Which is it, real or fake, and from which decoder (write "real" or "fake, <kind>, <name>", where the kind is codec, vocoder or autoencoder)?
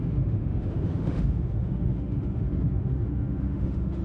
fake, autoencoder, DAC-VAE